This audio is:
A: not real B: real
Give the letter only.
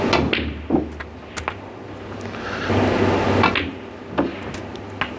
B